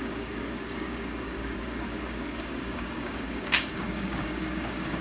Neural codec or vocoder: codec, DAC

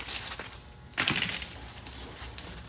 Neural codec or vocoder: none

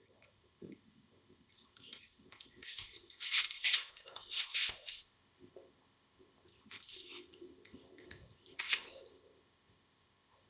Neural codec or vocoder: codec, ZipCodec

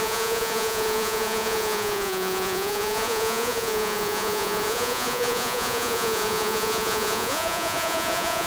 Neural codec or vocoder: vocoder, Vocos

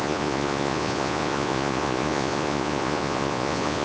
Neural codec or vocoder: vocoder, Vocos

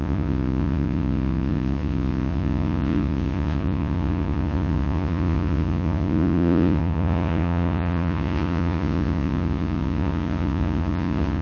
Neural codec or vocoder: vocoder, Vocos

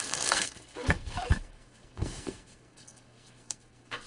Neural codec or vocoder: codec, SNAC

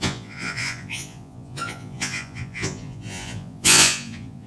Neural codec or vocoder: vocoder, Vocos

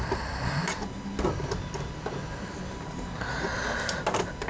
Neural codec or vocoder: none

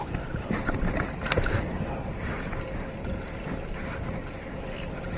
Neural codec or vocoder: none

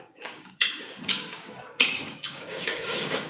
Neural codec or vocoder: codec, DAC